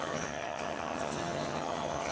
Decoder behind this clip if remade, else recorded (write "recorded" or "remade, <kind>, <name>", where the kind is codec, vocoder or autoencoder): remade, vocoder, HiFi-GAN